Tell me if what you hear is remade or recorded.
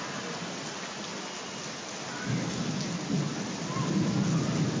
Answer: recorded